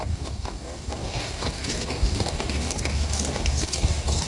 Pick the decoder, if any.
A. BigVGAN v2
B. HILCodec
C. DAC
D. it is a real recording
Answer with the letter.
C